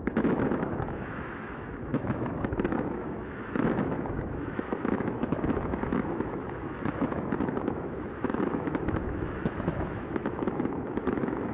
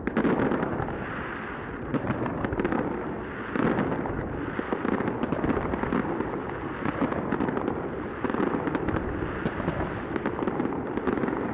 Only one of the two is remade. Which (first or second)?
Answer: first